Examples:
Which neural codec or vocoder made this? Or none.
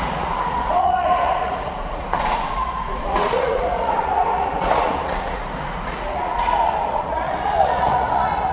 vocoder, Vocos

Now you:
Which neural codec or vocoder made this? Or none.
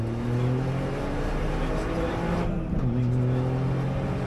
none